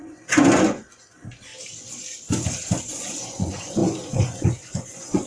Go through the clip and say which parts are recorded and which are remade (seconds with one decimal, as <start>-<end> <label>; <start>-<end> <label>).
0.0-1.5 remade; 1.5-2.8 recorded; 2.8-5.3 remade